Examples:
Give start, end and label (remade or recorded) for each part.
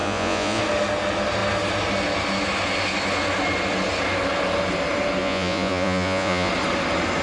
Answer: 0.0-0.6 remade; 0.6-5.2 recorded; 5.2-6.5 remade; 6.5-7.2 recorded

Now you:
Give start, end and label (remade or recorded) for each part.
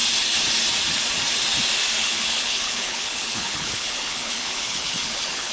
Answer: 0.0-2.0 recorded; 2.0-5.5 remade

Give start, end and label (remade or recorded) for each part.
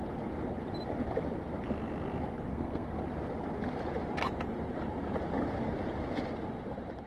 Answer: 0.0-2.5 recorded; 2.5-3.0 remade; 3.0-7.1 recorded